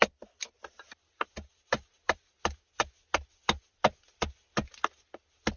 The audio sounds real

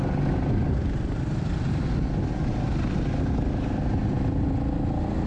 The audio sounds real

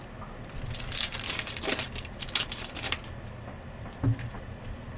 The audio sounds fake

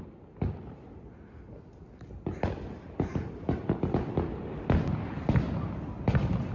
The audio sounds real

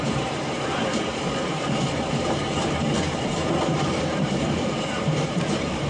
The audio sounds fake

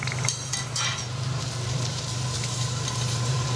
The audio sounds fake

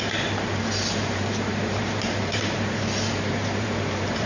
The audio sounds fake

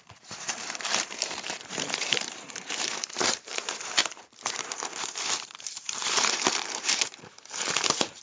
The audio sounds fake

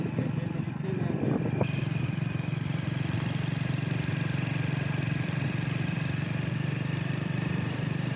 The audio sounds fake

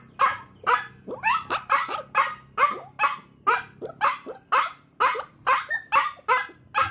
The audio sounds real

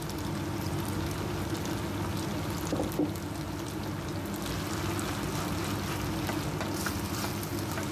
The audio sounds real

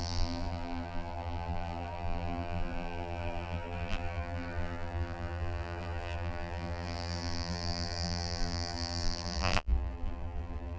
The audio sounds fake